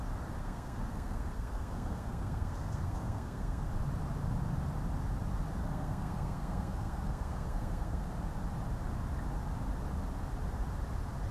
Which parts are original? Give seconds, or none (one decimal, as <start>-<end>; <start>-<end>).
0.0-0.4; 3.7-5.6; 8.1-11.3